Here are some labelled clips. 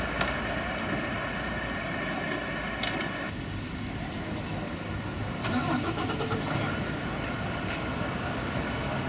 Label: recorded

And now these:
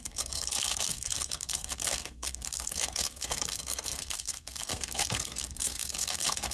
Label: remade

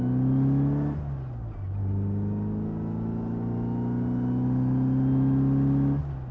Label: recorded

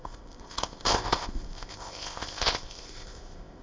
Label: remade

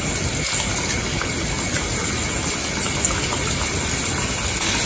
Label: recorded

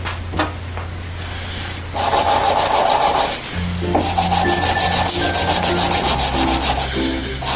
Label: recorded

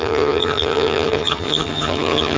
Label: remade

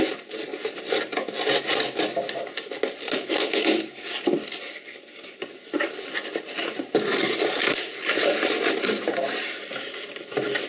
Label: recorded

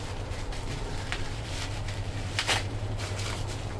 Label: remade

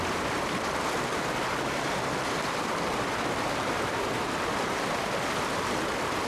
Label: recorded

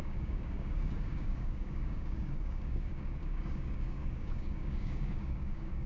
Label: remade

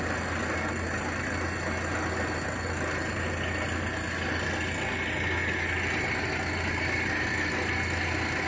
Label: recorded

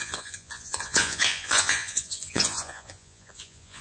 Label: remade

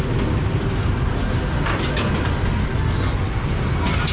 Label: recorded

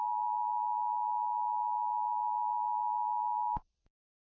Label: recorded